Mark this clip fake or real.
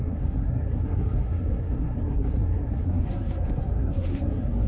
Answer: fake